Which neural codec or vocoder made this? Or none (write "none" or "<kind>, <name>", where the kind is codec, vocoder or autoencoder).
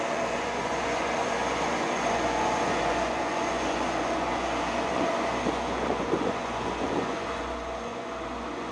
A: vocoder, Vocos